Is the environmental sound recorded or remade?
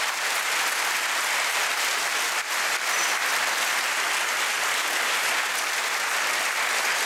recorded